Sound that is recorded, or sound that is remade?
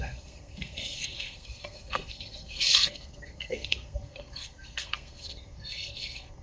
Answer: remade